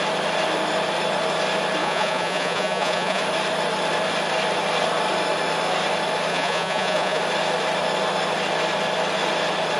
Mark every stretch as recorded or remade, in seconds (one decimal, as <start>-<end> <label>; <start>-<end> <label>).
0.0-1.8 recorded; 1.8-3.2 remade; 3.2-6.3 recorded; 6.3-7.2 remade; 7.2-9.8 recorded